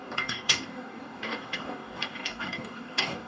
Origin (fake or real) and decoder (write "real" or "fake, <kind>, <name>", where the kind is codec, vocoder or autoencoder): fake, codec, DAC